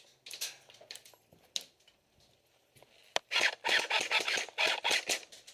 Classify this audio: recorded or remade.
recorded